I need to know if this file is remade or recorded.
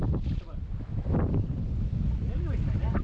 recorded